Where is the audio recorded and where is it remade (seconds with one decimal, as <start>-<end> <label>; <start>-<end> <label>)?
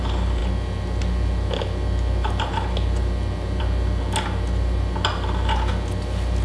0.0-6.4 recorded